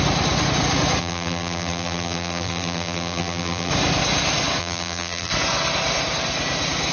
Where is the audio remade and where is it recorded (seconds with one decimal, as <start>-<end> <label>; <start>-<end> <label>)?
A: 0.0-1.0 recorded; 1.0-3.7 remade; 3.7-4.6 recorded; 4.6-5.3 remade; 5.3-6.9 recorded